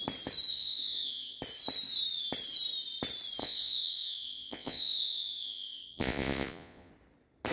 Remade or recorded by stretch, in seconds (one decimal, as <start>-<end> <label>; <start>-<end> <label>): 0.0-0.5 recorded; 0.5-1.4 remade; 1.4-3.4 recorded; 3.4-6.9 remade; 6.9-7.5 recorded